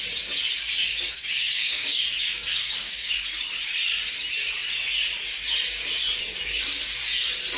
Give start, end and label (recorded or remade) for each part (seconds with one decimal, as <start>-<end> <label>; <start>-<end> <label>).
0.0-0.9 recorded; 0.9-3.1 remade; 3.1-7.6 recorded